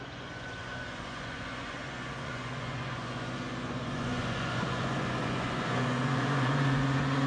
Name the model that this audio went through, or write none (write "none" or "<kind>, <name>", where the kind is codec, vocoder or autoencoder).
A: vocoder, Vocos